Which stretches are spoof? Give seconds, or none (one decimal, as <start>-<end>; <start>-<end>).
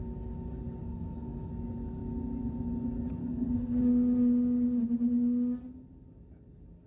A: 0.8-1.5; 3.2-3.8